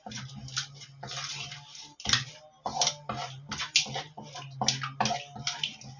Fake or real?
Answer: real